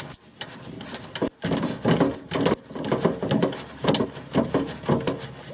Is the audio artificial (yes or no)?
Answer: no